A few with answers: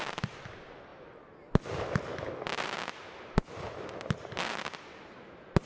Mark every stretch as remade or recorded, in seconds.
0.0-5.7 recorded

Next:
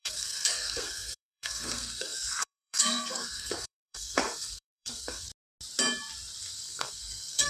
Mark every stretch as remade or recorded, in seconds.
0.0-5.3 remade; 5.3-6.4 recorded; 6.4-7.5 remade

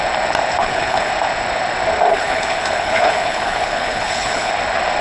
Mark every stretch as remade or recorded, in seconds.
0.0-0.6 recorded; 0.6-1.1 remade; 1.1-2.1 recorded; 2.1-4.5 remade; 4.5-5.0 recorded